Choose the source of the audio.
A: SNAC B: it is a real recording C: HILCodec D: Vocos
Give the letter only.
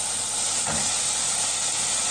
B